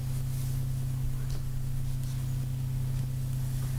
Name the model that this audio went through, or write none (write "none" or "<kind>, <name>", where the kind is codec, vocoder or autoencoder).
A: none